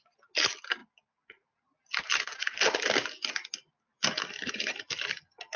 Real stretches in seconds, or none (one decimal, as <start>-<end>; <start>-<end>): 0.0-5.6